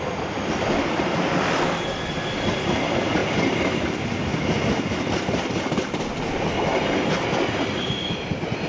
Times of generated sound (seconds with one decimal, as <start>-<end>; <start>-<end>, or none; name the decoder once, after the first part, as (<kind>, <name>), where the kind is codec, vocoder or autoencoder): none